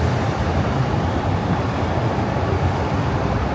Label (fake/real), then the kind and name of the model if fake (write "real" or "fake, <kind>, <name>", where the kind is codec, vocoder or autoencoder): fake, vocoder, BigVGAN v2